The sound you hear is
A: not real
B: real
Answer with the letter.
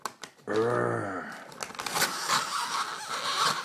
B